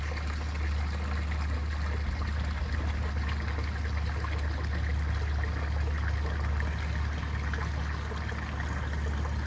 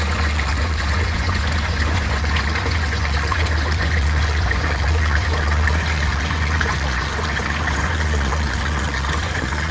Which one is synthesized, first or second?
second